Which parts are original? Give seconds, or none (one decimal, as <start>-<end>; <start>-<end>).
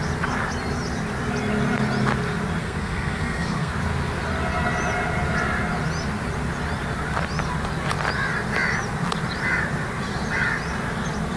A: 0.0-2.6; 3.7-11.4